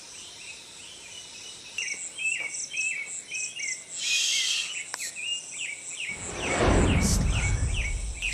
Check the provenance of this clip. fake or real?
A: real